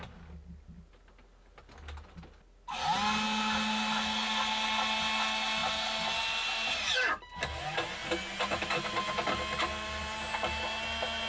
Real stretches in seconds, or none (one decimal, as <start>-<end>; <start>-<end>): 0.0-11.3